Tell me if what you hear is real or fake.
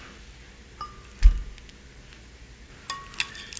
real